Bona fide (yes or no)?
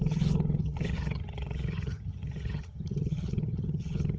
no